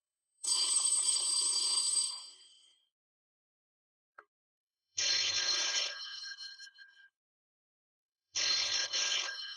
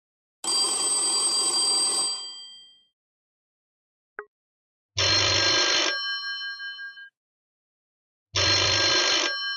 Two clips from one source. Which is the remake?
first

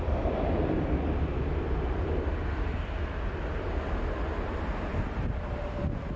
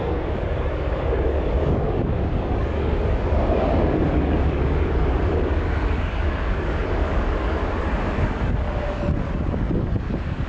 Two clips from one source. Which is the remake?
second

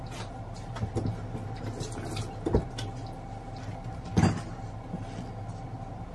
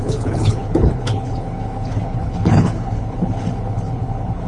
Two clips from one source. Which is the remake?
second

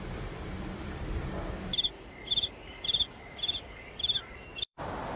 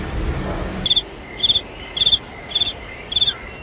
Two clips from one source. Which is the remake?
first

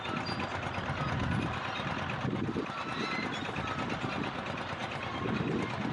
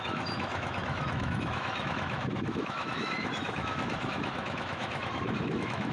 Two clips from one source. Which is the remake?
second